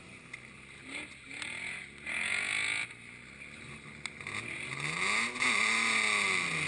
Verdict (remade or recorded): recorded